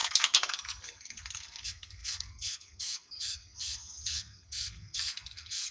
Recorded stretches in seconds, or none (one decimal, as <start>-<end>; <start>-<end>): none